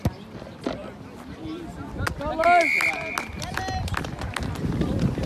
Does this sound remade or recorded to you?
recorded